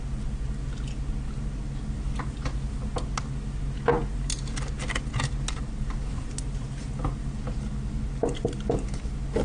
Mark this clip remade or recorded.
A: recorded